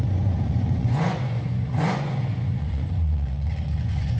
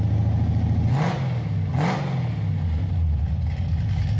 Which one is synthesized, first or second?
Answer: first